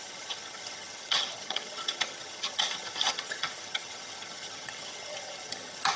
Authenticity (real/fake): fake